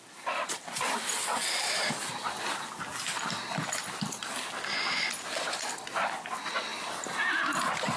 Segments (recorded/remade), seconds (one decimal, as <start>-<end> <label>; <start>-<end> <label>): 0.0-8.0 recorded